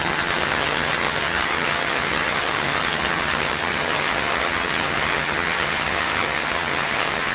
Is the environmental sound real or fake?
fake